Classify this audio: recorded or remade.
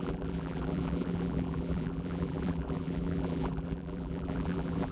remade